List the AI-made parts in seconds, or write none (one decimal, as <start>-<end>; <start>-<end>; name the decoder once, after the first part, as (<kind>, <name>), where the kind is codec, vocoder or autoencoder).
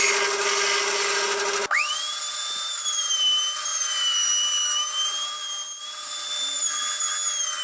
2.3-3.0 (vocoder, BigVGAN v2); 3.7-4.6; 5.8-7.1